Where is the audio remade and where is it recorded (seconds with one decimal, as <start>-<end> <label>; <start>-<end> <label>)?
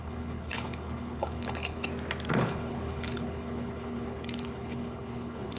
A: 0.0-1.9 remade; 1.9-2.4 recorded; 2.4-5.6 remade